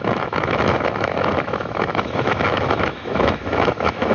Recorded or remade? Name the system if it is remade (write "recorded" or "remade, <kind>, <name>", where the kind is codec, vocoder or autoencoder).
remade, autoencoder, DAC-VAE